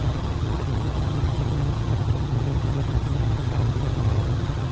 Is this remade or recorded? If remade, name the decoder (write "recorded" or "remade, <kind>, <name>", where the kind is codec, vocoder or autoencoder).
remade, vocoder, HiFi-GAN